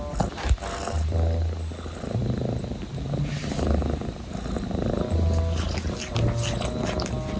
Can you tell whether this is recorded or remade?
recorded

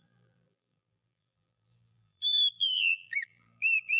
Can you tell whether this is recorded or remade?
remade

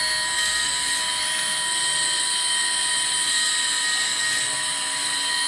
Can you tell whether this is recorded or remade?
recorded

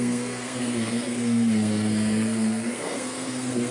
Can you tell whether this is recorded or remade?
remade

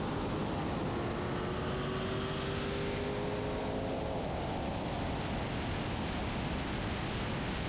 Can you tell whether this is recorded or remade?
recorded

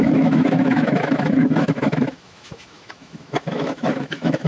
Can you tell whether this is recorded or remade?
remade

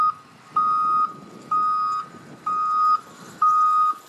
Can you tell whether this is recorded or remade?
recorded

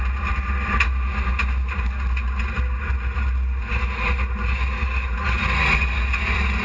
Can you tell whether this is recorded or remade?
recorded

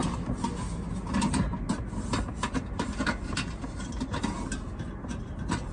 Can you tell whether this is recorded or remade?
recorded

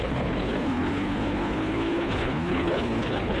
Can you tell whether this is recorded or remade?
remade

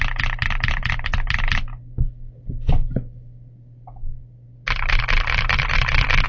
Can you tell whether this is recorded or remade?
recorded